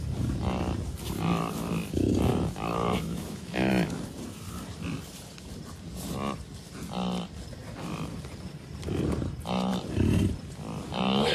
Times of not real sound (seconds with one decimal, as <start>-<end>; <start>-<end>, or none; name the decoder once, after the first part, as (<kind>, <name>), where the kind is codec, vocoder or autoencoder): 2.7-3.7 (autoencoder, DAC-VAE)